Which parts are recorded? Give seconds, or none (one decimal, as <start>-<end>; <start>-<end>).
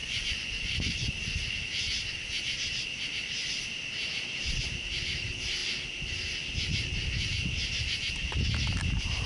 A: 1.1-9.3